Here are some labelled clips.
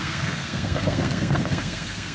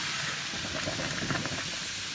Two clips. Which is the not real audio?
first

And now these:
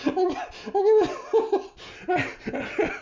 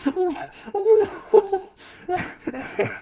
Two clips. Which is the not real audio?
second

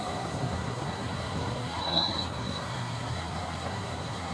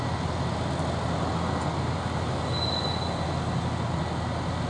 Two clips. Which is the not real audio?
first